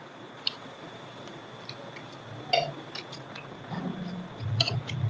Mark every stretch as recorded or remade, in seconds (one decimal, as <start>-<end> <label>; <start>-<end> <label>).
0.0-1.4 remade; 1.4-3.1 recorded; 3.1-5.1 remade